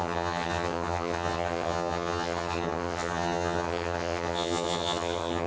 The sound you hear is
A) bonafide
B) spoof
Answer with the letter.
B